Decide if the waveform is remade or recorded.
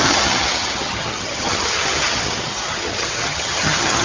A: remade